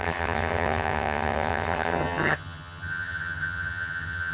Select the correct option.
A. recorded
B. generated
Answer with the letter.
B